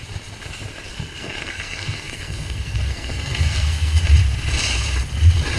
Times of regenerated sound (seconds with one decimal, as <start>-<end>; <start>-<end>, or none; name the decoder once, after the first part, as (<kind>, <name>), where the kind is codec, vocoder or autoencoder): 0.9-4.0 (codec, SNAC)